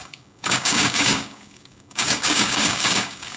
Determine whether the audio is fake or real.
fake